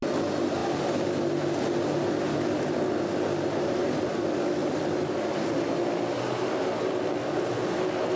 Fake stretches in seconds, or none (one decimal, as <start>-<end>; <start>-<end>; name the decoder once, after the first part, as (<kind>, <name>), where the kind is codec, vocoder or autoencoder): none